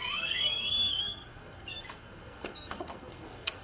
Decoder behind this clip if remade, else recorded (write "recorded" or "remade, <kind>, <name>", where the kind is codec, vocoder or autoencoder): remade, codec, SNAC